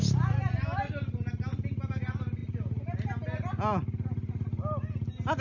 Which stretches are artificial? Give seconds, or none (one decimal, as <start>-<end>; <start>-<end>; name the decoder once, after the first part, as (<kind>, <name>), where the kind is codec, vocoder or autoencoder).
none